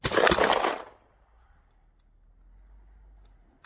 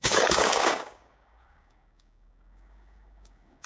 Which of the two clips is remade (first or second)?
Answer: second